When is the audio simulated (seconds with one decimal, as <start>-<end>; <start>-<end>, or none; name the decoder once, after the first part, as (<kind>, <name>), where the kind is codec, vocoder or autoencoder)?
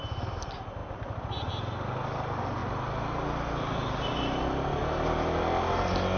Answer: none